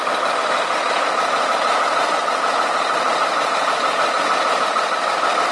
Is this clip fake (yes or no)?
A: yes